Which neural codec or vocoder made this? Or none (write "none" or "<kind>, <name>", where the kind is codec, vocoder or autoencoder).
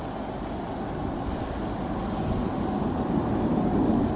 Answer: none